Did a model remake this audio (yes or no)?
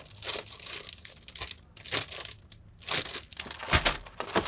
no